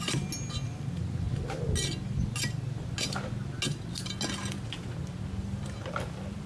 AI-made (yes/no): no